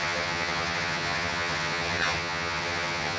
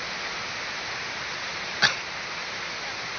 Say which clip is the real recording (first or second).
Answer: second